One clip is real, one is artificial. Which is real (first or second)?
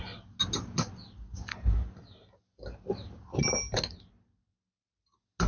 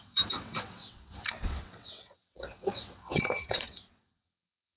first